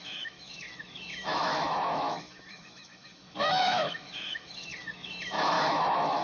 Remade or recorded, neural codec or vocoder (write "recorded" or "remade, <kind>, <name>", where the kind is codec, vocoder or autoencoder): remade, autoencoder, DAC-VAE